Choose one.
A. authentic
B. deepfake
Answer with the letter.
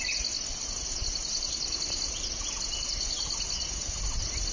A